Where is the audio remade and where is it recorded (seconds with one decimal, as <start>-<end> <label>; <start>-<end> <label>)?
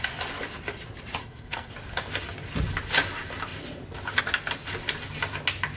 0.0-1.2 recorded; 1.2-1.7 remade; 1.7-5.8 recorded